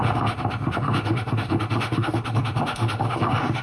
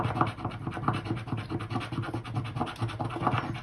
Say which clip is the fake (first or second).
first